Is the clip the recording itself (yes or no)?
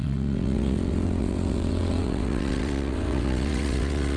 no